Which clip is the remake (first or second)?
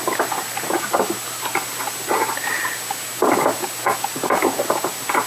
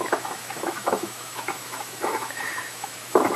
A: second